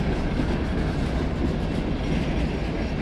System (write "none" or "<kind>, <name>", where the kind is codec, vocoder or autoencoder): none